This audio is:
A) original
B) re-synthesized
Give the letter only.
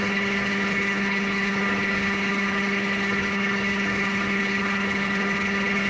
B